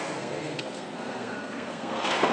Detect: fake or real fake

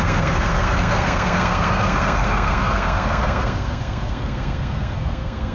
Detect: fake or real fake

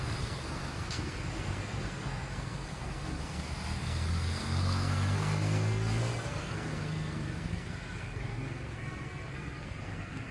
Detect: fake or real fake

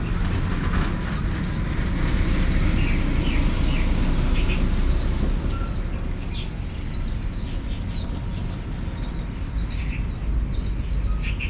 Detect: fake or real real